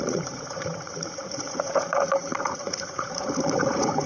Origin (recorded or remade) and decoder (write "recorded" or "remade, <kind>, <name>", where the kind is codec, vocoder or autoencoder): remade, vocoder, Vocos